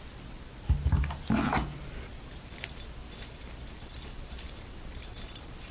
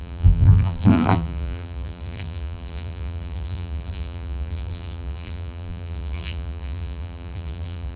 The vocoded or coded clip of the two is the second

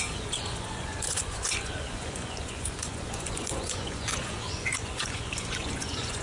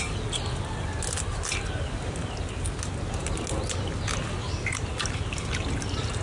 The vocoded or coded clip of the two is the first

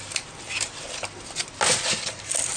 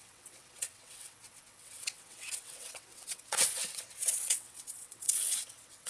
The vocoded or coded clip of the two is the second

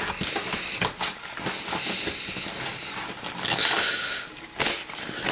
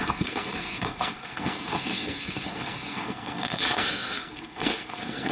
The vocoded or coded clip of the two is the second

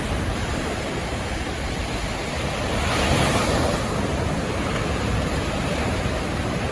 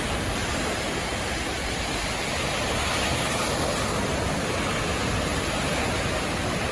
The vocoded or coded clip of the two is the first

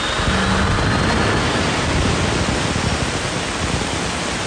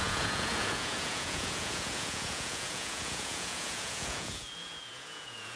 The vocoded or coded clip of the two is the second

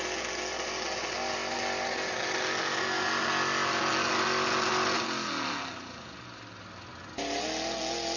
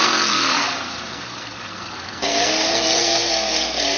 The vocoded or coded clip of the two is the second